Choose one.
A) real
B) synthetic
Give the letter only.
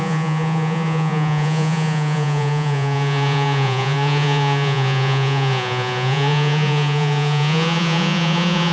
B